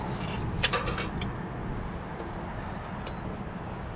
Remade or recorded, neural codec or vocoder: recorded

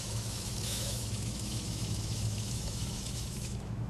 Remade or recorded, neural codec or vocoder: remade, autoencoder, DAC-VAE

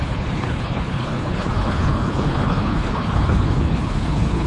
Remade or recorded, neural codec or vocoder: remade, codec, HILCodec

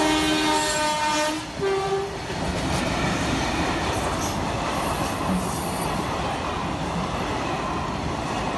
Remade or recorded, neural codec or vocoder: recorded